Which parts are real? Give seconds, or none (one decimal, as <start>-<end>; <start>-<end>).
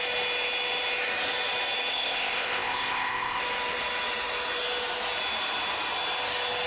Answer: 0.0-1.9; 3.4-6.7